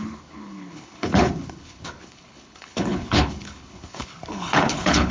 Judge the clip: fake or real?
fake